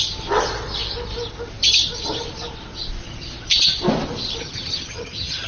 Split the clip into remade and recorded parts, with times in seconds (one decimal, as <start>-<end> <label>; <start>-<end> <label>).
0.0-4.4 recorded; 4.4-5.5 remade